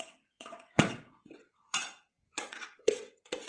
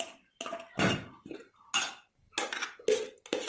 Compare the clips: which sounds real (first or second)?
second